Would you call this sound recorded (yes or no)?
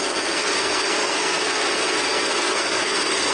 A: no